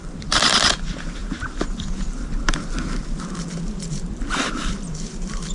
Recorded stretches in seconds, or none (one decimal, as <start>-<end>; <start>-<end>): none